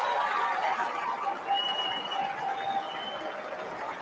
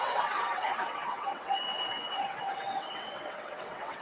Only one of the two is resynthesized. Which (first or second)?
second